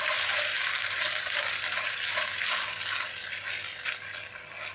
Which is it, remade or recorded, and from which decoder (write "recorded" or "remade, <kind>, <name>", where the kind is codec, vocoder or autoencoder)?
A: recorded